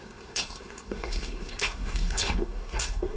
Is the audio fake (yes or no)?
yes